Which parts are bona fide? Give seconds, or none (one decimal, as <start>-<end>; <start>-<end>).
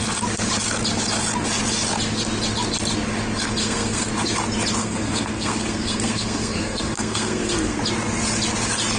0.0-3.6; 4.1-4.8; 7.8-9.0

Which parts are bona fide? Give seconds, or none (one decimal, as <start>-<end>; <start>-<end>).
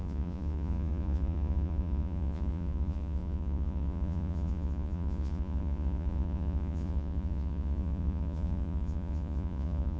none